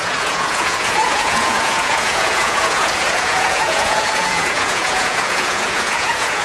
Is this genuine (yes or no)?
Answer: no